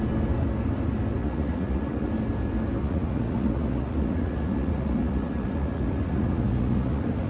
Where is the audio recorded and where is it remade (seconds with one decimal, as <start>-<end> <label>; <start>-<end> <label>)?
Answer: 0.0-1.2 recorded; 1.2-2.1 remade; 2.1-2.8 recorded; 2.8-7.3 remade